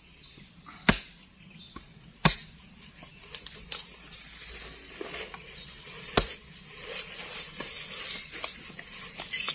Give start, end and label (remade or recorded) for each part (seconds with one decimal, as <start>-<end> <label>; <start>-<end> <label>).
0.0-9.5 recorded